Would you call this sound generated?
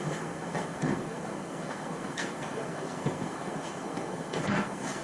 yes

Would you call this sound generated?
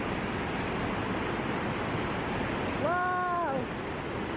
no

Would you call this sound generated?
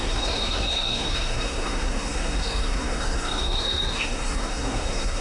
yes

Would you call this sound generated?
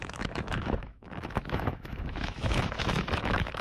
yes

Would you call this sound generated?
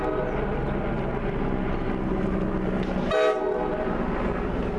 no